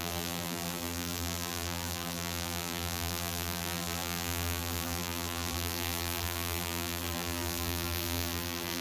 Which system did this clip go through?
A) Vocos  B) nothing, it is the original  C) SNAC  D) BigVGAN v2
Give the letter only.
D